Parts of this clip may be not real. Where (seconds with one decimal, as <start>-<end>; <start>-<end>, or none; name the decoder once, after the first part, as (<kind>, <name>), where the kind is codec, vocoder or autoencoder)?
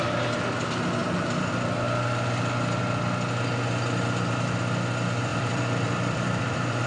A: 5.3-6.9 (vocoder, BigVGAN v2)